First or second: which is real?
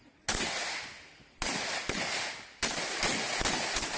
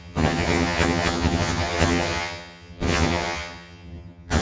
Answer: first